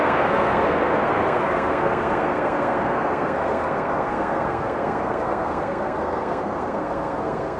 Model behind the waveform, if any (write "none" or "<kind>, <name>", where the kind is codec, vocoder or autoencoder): codec, SNAC